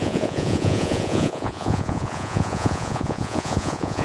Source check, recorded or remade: remade